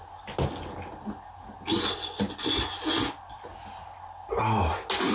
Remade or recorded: recorded